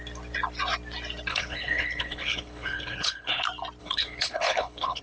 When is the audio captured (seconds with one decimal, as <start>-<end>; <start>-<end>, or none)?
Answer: 0.0-1.3; 3.4-3.8